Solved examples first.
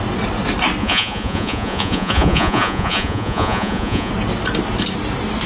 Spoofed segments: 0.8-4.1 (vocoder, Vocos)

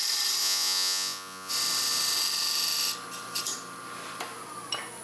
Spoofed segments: 0.4-1.5 (vocoder, Vocos)

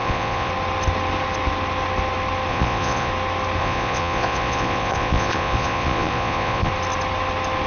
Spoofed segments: 0.0-0.5 (vocoder, Vocos); 2.5-3.1; 3.6-6.7

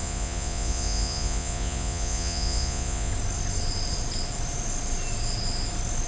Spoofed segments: 0.0-3.1 (vocoder, Vocos)